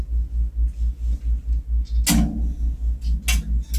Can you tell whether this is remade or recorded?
recorded